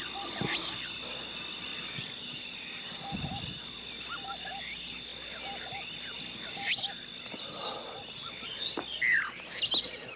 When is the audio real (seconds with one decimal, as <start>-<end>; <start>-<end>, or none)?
0.0-10.2